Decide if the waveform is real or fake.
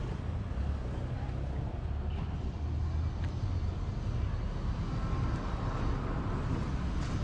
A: real